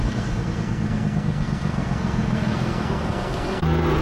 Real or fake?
fake